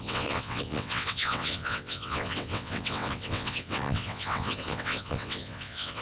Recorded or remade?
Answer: remade